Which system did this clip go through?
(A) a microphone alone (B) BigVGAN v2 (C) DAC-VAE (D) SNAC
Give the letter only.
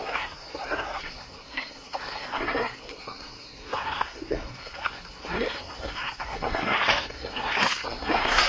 D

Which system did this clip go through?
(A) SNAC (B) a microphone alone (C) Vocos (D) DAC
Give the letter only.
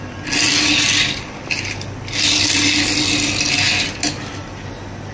B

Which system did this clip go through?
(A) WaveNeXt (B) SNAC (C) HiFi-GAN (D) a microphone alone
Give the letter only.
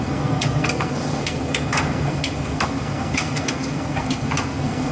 B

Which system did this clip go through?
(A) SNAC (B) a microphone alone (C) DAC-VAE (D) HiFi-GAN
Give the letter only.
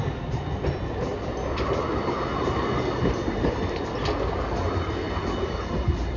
B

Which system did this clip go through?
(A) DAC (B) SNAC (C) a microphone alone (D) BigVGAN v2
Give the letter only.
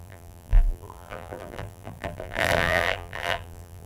D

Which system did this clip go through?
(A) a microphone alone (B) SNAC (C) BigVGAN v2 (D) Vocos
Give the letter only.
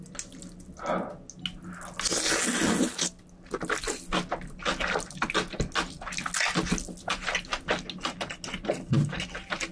A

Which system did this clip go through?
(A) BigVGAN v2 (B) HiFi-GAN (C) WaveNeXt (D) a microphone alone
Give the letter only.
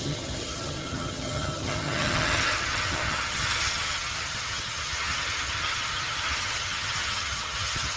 B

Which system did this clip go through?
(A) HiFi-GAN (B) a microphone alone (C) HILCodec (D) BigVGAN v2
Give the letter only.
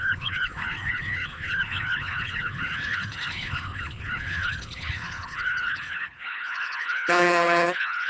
C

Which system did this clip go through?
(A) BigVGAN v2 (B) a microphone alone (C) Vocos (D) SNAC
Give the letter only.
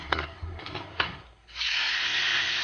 D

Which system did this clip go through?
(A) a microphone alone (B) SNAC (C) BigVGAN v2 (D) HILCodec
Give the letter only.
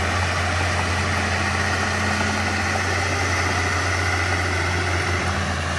A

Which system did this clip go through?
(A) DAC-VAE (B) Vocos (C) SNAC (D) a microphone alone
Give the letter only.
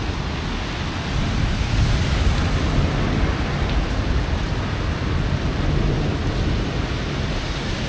D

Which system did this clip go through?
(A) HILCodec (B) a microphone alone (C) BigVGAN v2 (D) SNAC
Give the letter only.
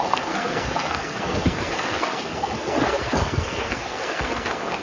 D